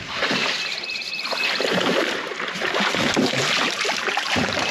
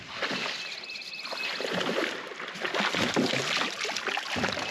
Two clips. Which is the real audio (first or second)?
second